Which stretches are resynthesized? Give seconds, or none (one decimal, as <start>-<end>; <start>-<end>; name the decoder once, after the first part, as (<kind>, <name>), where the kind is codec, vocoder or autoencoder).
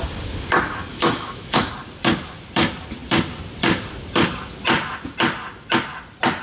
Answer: 0.9-1.7 (autoencoder, DAC-VAE)